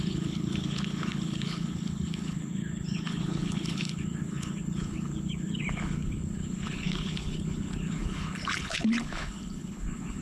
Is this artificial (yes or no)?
yes